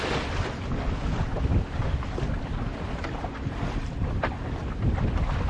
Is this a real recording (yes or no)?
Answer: yes